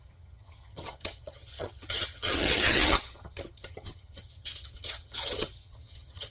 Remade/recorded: remade